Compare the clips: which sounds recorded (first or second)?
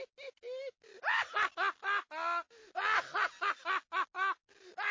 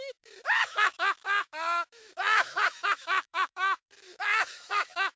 first